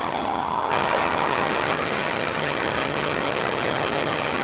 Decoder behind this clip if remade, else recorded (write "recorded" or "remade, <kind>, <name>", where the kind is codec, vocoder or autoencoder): remade, vocoder, HiFi-GAN